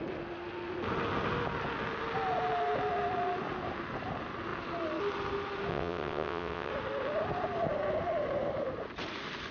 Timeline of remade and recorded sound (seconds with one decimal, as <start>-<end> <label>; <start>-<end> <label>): 0.0-5.7 recorded; 5.7-6.7 remade; 6.7-9.5 recorded

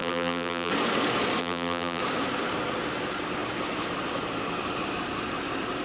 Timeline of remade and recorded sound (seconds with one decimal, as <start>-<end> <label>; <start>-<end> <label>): 0.0-0.7 remade; 0.7-1.4 recorded; 1.4-2.0 remade; 2.0-5.8 recorded